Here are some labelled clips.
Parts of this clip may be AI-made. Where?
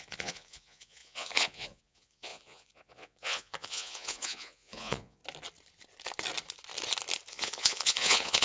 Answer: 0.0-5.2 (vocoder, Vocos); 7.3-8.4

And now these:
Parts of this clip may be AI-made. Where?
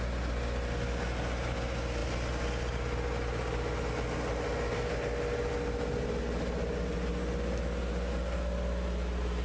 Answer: none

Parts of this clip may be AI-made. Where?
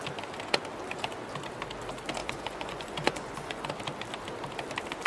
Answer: 2.2-3.7 (vocoder, Vocos)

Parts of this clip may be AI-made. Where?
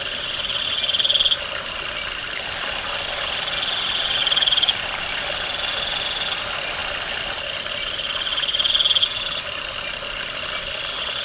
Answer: 4.2-5.2 (vocoder, BigVGAN v2)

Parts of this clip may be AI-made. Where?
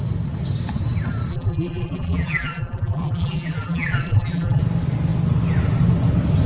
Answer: 1.3-4.6 (vocoder, BigVGAN v2)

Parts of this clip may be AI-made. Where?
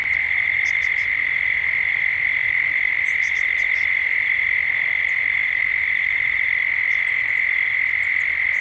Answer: none